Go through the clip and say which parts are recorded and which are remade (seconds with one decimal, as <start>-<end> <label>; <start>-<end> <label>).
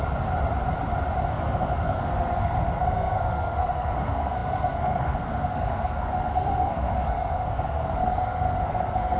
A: 0.0-1.3 recorded; 1.3-9.2 remade